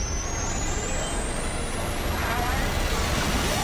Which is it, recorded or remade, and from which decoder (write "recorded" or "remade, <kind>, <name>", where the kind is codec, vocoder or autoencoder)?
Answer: recorded